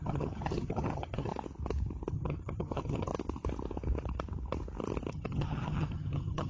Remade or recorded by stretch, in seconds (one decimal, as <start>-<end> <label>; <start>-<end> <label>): 0.0-1.3 remade; 1.3-2.1 recorded; 2.1-3.1 remade; 3.1-5.1 recorded; 5.1-6.5 remade